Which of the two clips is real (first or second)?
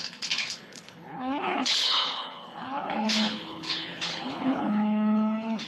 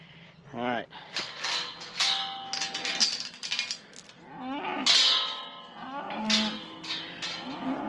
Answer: second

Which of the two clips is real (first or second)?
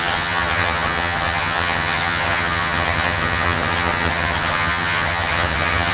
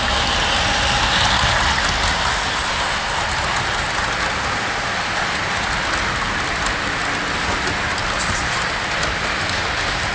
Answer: second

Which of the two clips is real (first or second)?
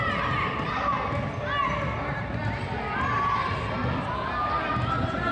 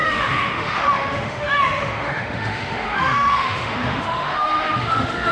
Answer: first